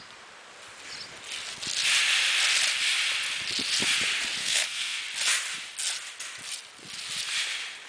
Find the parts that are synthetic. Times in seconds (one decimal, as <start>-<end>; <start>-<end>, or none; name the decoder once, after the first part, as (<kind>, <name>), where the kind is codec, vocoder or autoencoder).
4.4-5.0 (codec, SNAC)